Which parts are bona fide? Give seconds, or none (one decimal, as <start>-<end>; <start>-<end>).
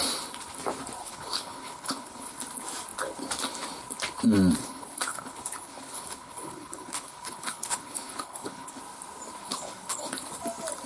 0.0-1.0; 2.4-4.6; 8.8-9.4; 10.3-10.9